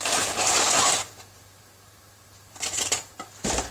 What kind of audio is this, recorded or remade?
remade